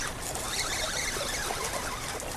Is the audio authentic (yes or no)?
yes